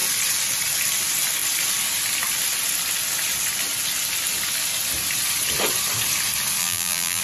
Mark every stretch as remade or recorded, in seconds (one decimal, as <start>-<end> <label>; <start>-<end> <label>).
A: 0.0-6.6 recorded; 6.6-7.2 remade